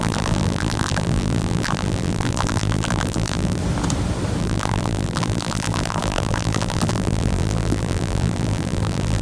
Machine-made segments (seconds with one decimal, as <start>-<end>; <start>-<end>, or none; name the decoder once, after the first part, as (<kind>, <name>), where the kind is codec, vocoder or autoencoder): 0.0-3.6 (vocoder, BigVGAN v2); 4.4-9.2